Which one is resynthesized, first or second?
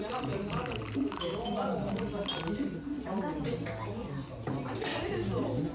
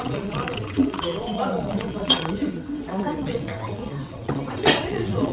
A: second